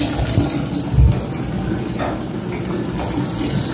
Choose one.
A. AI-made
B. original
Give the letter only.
B